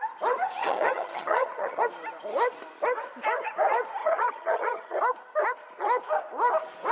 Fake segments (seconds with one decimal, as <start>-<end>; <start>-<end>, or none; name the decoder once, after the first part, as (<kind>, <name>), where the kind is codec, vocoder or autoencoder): 0.6-1.8 (vocoder, HiFi-GAN); 4.0-5.0